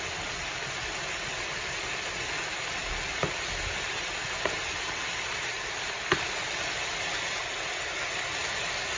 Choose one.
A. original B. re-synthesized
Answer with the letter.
A